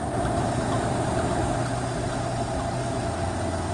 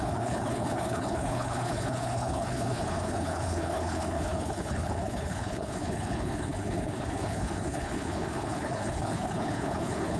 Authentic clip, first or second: first